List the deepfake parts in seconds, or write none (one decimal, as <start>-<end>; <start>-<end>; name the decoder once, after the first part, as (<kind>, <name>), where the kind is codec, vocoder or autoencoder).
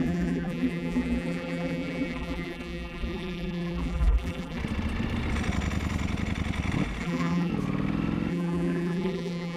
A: 0.0-4.6 (vocoder, BigVGAN v2); 7.0-7.5; 8.3-9.6